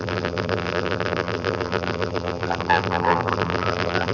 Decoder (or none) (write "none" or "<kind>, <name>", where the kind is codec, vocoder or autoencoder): vocoder, BigVGAN v2